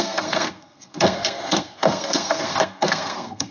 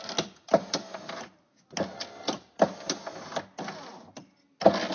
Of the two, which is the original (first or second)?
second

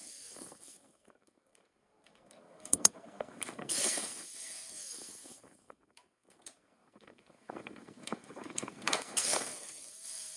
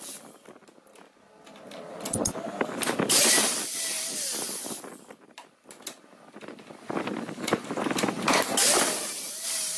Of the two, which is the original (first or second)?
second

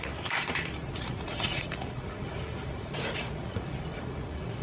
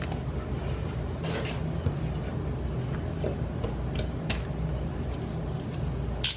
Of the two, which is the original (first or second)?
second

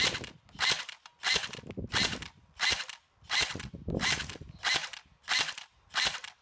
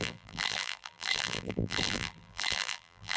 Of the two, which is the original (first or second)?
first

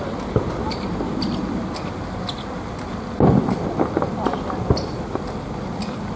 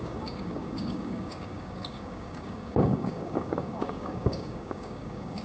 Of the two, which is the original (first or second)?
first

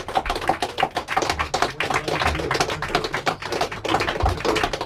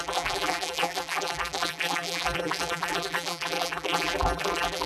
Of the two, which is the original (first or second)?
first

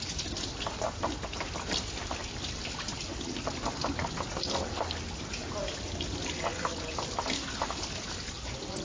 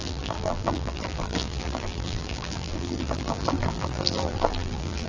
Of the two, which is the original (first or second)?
first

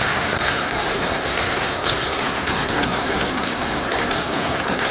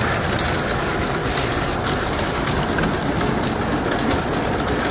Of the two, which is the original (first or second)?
second